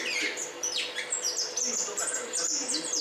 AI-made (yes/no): no